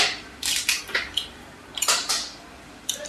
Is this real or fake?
fake